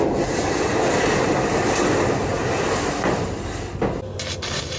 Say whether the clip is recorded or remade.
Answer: recorded